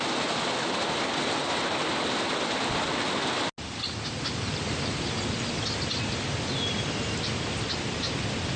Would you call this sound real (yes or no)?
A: yes